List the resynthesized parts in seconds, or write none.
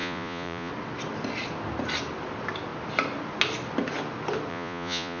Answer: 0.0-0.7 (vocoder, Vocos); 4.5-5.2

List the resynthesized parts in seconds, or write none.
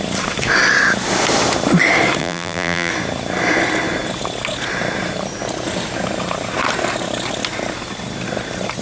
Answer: 2.2-2.9 (vocoder, BigVGAN v2)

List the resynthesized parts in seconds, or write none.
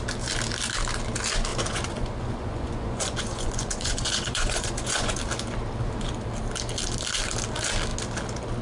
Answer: 1.5-5.2 (vocoder, Vocos)